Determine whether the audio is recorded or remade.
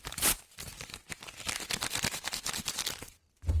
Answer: recorded